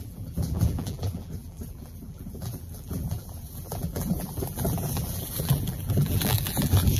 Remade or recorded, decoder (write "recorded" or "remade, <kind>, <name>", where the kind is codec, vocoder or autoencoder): remade, vocoder, BigVGAN v2